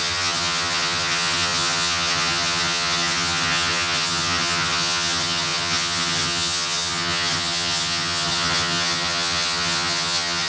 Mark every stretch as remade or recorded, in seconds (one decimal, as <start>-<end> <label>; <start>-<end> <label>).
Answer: 0.0-10.5 remade

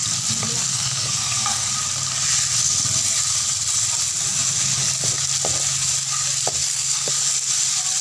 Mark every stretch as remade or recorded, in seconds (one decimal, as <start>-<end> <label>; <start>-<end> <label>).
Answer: 0.0-0.6 recorded; 0.6-1.7 remade; 1.7-6.6 recorded; 6.6-7.1 remade; 7.1-8.0 recorded

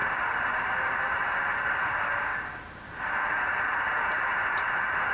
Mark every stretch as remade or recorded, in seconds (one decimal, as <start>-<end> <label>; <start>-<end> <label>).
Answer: 0.0-2.3 remade; 2.3-3.0 recorded; 3.0-5.1 remade

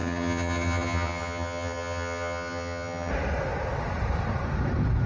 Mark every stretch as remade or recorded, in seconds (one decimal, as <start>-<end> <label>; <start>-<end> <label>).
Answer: 0.0-3.1 remade; 3.1-5.1 recorded

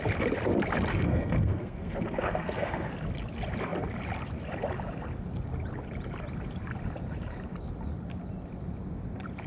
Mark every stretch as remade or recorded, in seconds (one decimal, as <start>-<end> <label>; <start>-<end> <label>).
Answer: 0.0-0.9 recorded; 0.9-2.9 remade; 2.9-9.5 recorded